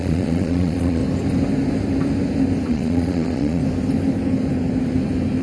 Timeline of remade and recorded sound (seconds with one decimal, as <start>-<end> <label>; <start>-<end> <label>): 0.0-1.0 remade; 1.0-2.7 recorded; 2.7-3.6 remade; 3.6-5.4 recorded